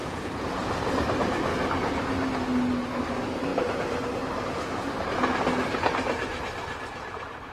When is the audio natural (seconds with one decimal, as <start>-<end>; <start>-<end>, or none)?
0.7-7.5